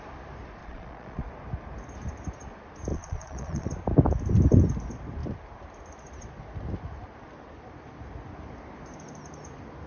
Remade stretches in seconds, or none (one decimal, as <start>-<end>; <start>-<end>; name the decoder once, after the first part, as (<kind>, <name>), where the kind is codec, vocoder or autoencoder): 0.6-1.3 (vocoder, Vocos); 2.9-3.7